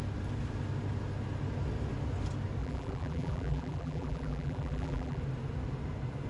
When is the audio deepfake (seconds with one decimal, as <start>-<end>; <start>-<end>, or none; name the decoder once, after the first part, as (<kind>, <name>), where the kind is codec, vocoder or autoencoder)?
2.6-5.2 (vocoder, BigVGAN v2)